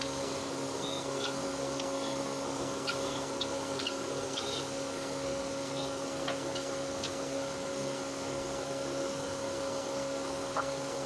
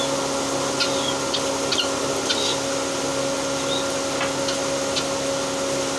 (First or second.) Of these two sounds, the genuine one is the second